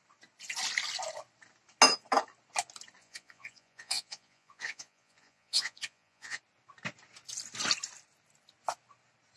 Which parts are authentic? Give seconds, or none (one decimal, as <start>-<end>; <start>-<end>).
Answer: 0.0-3.0; 6.4-9.4